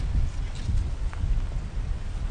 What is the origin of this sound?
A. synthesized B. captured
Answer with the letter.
B